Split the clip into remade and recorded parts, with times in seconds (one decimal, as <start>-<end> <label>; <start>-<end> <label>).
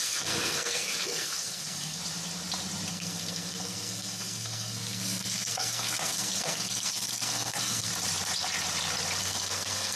0.0-2.0 remade; 2.0-2.9 recorded; 2.9-7.9 remade; 7.9-9.2 recorded; 9.2-10.0 remade